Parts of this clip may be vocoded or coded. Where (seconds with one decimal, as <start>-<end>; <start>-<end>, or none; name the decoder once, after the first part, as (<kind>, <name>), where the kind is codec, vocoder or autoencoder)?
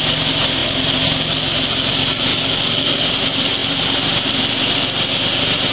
2.3-3.1 (codec, DAC)